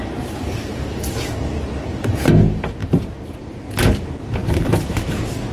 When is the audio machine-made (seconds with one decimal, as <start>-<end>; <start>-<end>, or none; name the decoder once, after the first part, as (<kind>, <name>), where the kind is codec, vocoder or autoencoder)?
none

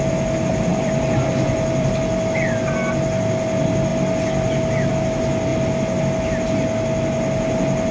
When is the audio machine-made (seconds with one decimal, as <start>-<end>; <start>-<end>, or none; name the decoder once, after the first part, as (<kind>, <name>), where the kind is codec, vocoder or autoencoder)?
0.7-1.9 (vocoder, BigVGAN v2)

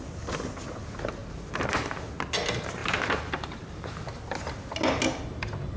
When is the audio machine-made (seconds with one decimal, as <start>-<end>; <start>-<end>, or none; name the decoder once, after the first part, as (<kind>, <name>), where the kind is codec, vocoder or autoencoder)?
1.2-2.0 (vocoder, BigVGAN v2); 2.8-3.9